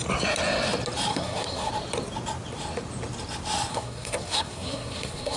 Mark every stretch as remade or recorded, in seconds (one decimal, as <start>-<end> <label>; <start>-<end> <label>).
0.0-1.1 recorded; 1.1-1.7 remade; 1.7-3.7 recorded; 3.7-5.4 remade